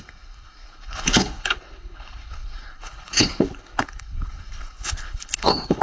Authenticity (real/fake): fake